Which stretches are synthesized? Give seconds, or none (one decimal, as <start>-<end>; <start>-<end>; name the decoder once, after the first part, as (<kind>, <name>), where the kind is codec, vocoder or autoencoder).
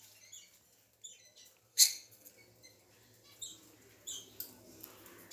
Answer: 1.7-2.3 (codec, SNAC)